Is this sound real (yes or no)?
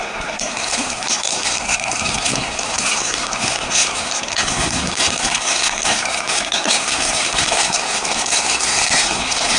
no